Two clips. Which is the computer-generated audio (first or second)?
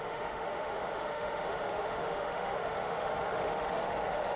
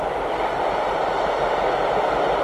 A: first